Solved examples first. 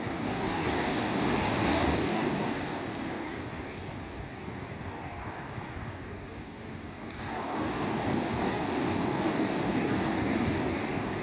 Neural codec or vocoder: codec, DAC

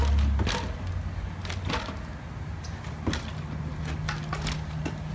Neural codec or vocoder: none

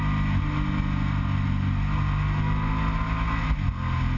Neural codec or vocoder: none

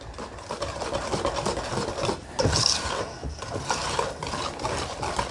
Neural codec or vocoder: none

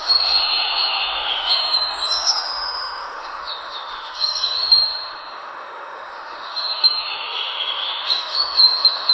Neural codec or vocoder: autoencoder, DAC-VAE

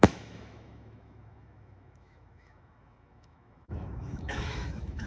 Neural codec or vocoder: autoencoder, DAC-VAE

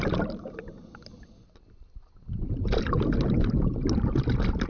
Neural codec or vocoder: none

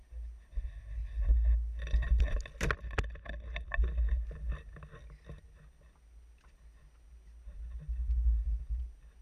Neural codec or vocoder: none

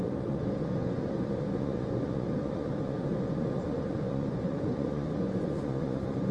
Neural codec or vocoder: vocoder, Vocos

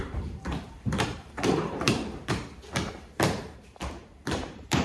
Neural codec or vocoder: vocoder, BigVGAN v2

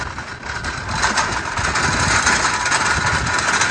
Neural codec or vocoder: none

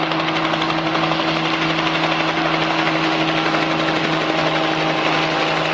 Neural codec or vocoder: none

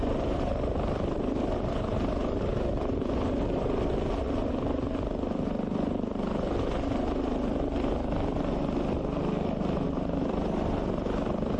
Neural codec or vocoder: vocoder, BigVGAN v2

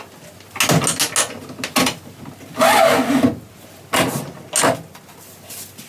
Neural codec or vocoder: none